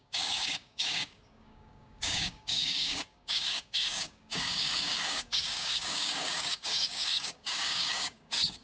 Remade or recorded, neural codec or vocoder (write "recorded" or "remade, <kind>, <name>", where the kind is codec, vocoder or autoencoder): remade, codec, DAC